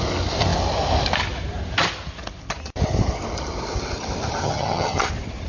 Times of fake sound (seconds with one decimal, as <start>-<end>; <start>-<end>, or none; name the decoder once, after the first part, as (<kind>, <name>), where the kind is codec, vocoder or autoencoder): 4.4-5.1 (vocoder, HiFi-GAN)